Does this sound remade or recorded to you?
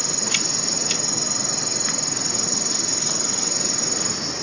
recorded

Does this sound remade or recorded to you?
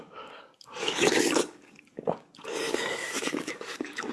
remade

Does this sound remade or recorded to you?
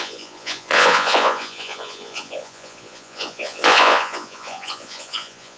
remade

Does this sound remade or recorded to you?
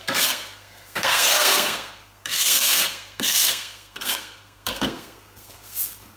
remade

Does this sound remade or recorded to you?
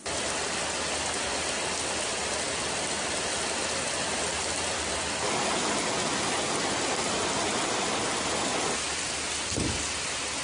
recorded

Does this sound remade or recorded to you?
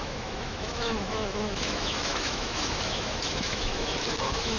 remade